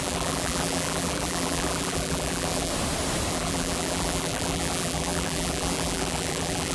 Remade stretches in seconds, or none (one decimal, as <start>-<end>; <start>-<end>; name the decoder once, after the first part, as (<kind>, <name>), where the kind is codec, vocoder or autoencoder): 0.0-2.7 (vocoder, BigVGAN v2); 3.3-6.7